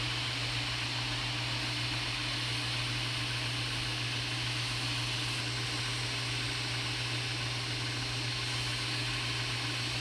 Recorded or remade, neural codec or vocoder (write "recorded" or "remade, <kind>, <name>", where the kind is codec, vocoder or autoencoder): recorded